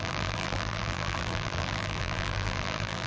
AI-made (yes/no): yes